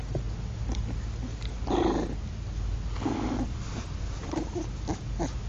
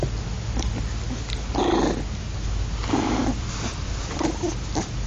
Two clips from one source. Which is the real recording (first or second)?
second